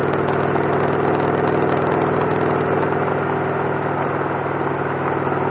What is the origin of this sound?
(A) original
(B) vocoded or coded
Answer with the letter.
A